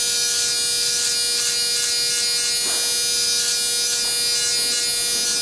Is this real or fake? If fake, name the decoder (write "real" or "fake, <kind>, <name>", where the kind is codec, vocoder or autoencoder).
real